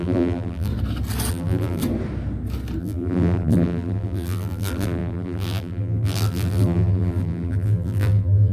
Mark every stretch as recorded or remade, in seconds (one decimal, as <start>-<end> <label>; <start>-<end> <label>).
0.0-0.7 remade; 0.7-1.3 recorded; 1.3-1.8 remade; 1.8-2.8 recorded; 2.8-8.5 remade